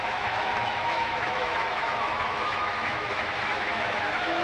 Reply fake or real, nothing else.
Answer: fake